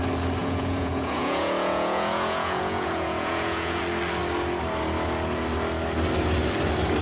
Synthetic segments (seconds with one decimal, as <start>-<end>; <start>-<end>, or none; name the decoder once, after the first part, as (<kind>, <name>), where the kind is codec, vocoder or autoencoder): 0.4-3.8 (vocoder, Vocos)